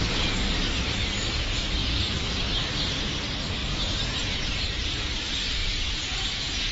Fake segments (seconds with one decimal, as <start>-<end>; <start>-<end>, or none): 1.8-2.4; 3.6-5.1; 5.6-6.7